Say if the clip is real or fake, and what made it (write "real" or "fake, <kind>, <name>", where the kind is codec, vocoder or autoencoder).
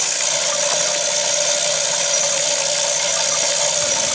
real